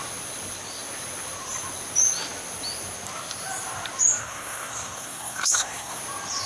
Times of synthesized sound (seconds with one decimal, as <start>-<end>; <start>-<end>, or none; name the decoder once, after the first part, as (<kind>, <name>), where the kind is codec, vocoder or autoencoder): 4.2-6.0 (codec, SNAC)